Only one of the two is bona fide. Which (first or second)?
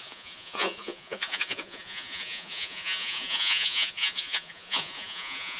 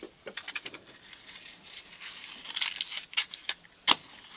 second